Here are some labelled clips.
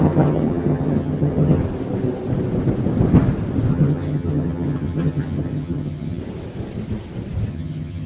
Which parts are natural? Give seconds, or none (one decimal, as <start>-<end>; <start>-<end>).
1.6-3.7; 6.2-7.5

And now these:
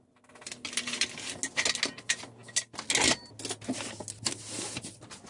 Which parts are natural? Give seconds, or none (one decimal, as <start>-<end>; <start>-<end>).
0.0-5.3

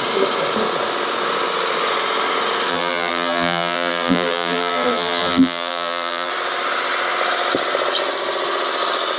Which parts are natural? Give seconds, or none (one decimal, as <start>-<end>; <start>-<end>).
0.0-2.7; 6.3-9.2

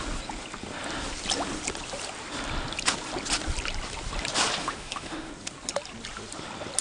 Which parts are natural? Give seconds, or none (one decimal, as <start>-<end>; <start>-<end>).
0.0-4.6; 5.3-6.8